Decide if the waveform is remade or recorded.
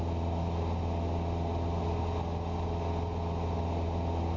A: recorded